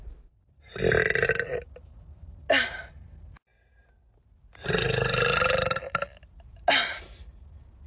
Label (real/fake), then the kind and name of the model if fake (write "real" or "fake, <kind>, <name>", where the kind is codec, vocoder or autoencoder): real